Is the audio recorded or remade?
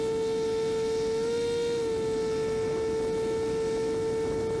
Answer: recorded